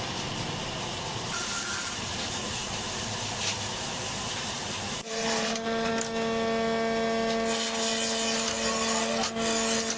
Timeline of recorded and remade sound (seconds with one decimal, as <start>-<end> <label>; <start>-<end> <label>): 0.0-0.9 recorded; 0.9-5.9 remade; 5.9-10.0 recorded